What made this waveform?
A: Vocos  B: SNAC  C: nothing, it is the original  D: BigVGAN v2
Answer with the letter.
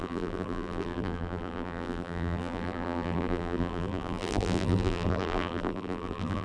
D